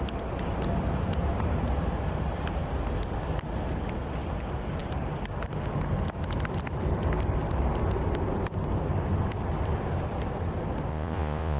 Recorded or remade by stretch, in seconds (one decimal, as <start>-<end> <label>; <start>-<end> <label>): 0.0-10.9 recorded; 10.9-11.6 remade